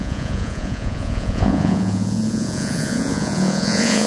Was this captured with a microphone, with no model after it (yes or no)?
no